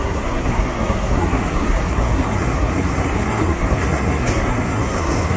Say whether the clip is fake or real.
fake